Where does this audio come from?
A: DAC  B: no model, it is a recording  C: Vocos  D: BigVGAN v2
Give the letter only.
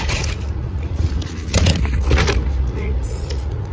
C